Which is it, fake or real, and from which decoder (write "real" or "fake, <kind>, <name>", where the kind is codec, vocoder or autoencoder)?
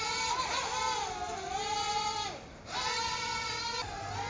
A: real